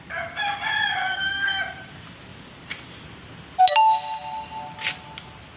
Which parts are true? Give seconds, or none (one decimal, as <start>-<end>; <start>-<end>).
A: 0.0-1.0; 1.6-5.6